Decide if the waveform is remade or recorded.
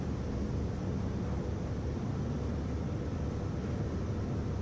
recorded